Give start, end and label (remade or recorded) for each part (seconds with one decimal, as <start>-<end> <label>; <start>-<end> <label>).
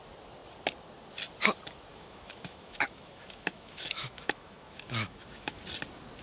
0.0-1.9 recorded; 1.9-5.6 remade; 5.6-6.2 recorded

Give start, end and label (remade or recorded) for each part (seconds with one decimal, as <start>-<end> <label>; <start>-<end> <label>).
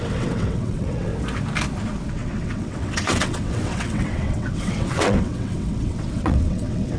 0.0-1.1 remade; 1.1-2.1 recorded; 2.1-7.0 remade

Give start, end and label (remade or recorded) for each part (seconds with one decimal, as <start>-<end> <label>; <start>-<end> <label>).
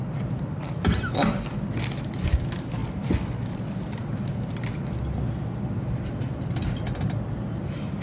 0.0-8.0 recorded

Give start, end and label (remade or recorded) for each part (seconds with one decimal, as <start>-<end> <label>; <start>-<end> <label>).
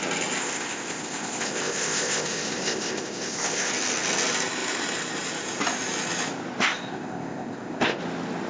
0.0-0.4 recorded; 0.4-3.7 remade; 3.7-6.6 recorded; 6.6-8.0 remade; 8.0-8.5 recorded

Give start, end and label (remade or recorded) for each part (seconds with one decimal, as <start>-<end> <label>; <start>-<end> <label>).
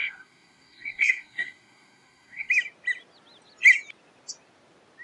0.0-2.5 remade; 2.5-5.0 recorded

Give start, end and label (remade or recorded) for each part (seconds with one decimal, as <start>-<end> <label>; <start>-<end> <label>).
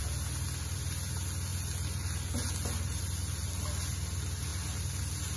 0.0-5.4 recorded